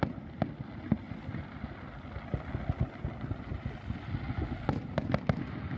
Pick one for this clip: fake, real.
real